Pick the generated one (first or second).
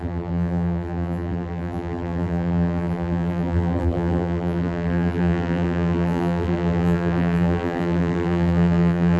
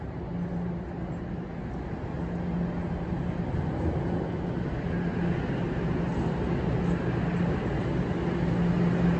first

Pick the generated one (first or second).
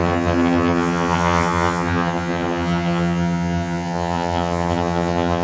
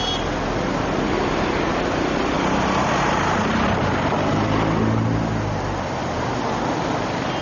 first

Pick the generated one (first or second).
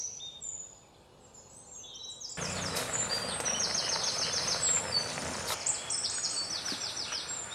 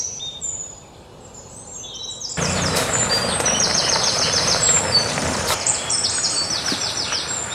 second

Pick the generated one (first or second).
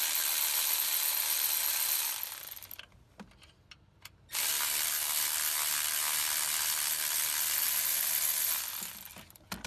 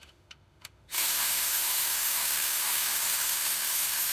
second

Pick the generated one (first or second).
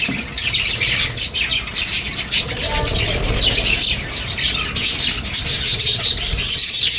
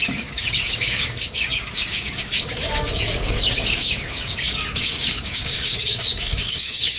second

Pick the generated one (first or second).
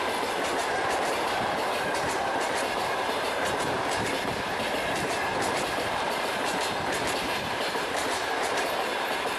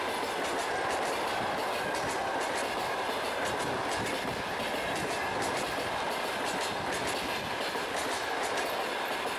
first